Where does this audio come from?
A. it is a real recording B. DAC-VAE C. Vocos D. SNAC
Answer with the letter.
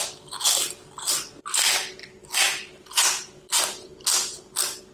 A